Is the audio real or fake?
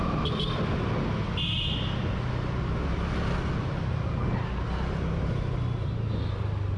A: real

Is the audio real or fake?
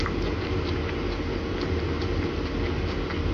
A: real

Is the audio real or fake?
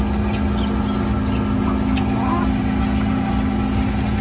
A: real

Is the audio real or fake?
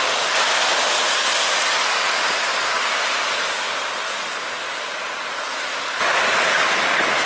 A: real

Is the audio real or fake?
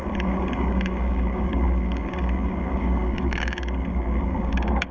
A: fake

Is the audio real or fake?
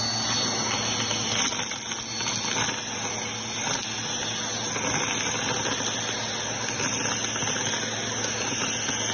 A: real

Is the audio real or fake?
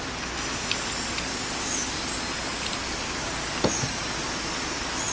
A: real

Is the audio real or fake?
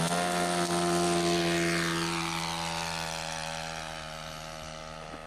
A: real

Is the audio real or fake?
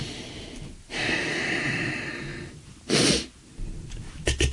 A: real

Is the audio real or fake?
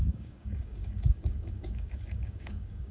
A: fake